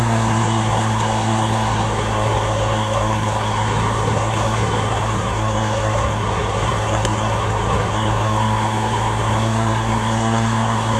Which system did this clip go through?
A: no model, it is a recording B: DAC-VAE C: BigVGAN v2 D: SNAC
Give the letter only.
D